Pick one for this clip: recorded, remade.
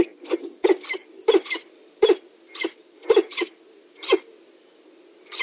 recorded